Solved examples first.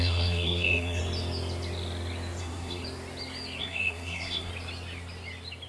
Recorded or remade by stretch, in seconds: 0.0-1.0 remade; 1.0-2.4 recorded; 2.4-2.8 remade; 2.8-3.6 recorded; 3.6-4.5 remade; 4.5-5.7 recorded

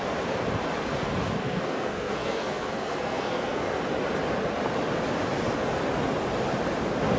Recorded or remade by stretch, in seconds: 0.0-1.4 recorded; 1.4-3.8 remade; 3.8-7.2 recorded

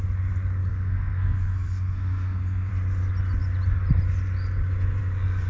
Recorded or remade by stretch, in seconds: 0.0-0.7 recorded; 0.7-2.7 remade; 2.7-5.5 recorded